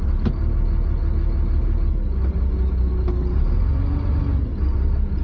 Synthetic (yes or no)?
no